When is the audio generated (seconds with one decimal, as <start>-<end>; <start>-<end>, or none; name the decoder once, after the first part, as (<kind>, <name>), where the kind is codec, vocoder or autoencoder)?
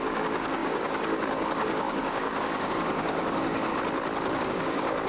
0.0-3.7 (codec, DAC); 4.4-5.1